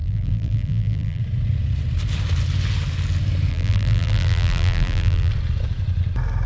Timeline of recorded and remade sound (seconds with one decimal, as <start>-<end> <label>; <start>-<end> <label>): 0.0-1.2 remade; 1.2-3.5 recorded; 3.5-5.3 remade; 5.3-6.5 recorded